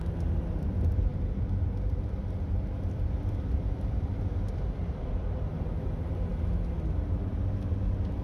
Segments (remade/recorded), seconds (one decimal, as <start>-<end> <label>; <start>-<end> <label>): 0.0-1.1 recorded; 1.1-4.2 remade; 4.2-8.2 recorded